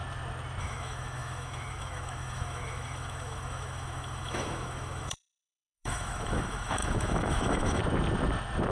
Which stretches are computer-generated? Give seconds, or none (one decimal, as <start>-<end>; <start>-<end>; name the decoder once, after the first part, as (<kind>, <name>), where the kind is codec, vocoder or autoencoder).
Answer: 0.6-7.8 (autoencoder, DAC-VAE)

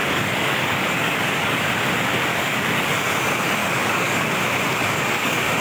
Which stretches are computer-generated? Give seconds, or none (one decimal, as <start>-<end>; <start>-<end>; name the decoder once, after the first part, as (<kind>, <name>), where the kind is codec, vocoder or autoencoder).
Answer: 0.0-1.7 (codec, DAC); 2.3-2.9; 3.6-4.3; 4.8-5.6

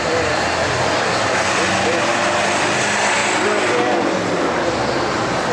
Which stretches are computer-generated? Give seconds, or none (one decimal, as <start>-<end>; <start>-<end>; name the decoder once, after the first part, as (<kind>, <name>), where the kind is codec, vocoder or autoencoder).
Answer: none